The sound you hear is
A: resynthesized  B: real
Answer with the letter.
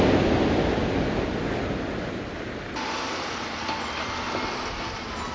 B